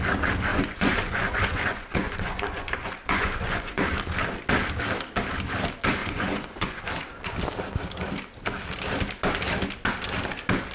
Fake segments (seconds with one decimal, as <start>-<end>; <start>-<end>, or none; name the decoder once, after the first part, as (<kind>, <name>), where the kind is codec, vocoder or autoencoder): 0.5-3.8 (vocoder, Vocos); 6.0-6.8